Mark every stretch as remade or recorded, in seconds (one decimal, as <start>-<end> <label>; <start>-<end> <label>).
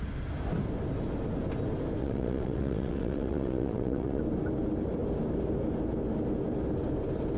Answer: 0.0-2.0 recorded; 2.0-4.2 remade; 4.2-7.4 recorded